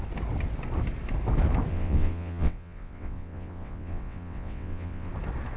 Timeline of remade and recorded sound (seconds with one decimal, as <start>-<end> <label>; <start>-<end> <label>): 0.0-1.7 recorded; 1.7-5.1 remade; 5.1-5.6 recorded